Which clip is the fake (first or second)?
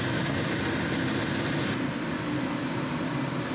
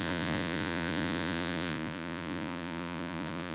second